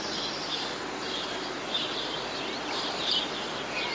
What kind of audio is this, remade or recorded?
recorded